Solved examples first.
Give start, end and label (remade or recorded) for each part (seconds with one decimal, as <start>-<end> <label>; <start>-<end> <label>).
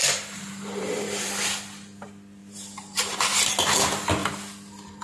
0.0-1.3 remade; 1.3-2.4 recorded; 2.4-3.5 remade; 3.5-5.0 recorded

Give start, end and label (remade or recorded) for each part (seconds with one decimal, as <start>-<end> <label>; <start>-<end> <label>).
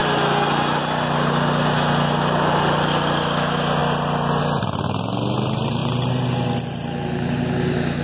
0.0-5.8 recorded; 5.8-6.3 remade; 6.3-8.0 recorded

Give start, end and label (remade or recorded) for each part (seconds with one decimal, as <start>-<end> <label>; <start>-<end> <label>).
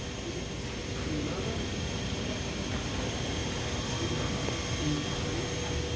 0.0-0.8 recorded; 0.8-1.9 remade; 1.9-6.0 recorded